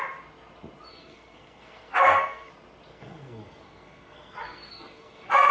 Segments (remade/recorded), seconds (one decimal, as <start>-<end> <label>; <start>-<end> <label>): 0.0-0.9 recorded; 0.9-2.5 remade; 2.5-2.9 recorded; 2.9-5.5 remade